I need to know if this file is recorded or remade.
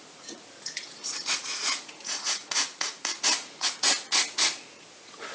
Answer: remade